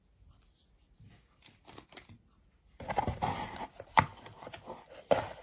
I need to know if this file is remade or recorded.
recorded